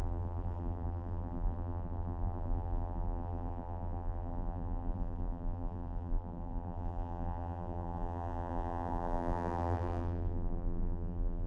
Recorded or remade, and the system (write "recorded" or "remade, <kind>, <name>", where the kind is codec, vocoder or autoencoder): remade, vocoder, BigVGAN v2